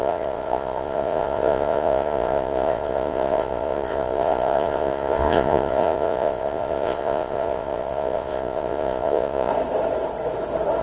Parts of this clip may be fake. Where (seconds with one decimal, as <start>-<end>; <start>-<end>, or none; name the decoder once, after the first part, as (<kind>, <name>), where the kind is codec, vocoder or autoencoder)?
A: 0.0-9.5 (vocoder, Vocos)